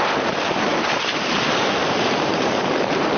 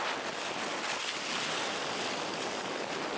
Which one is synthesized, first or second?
first